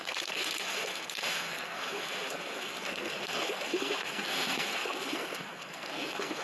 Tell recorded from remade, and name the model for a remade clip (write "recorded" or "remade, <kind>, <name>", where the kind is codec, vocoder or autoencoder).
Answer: remade, codec, SNAC